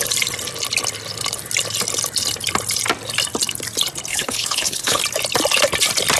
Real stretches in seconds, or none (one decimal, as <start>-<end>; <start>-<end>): 0.0-4.1; 5.0-6.2